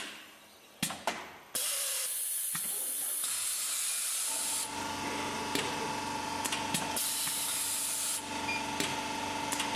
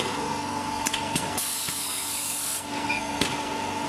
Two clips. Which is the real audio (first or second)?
first